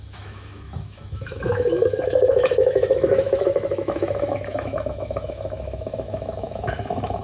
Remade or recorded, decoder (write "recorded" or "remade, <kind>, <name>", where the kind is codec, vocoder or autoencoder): remade, autoencoder, DAC-VAE